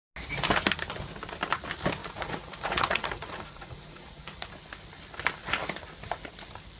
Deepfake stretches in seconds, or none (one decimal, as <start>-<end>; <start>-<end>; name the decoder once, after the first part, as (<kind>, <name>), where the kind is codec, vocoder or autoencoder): 2.0-4.5 (vocoder, Vocos)